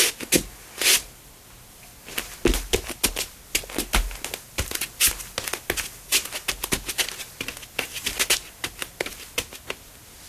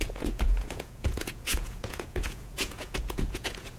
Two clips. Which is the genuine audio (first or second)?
first